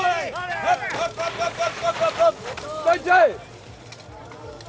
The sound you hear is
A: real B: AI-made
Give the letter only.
A